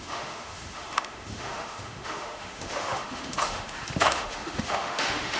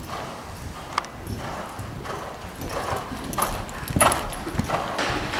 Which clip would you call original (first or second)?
second